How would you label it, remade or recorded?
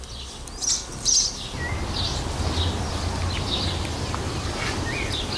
recorded